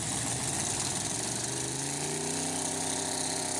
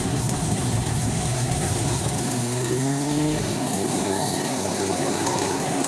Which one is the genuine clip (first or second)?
first